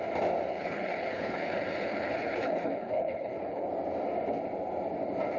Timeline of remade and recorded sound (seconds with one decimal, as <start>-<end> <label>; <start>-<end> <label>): 0.0-0.5 recorded; 0.5-3.7 remade; 3.7-5.4 recorded